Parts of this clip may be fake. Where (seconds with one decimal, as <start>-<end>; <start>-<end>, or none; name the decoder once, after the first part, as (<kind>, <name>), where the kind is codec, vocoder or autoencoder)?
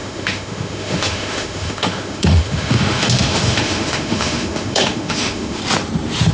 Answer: 0.0-5.6 (autoencoder, DAC-VAE)